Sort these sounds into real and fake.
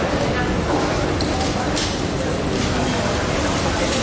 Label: real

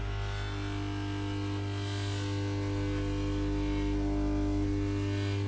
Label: real